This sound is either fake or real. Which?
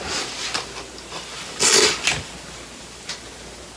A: real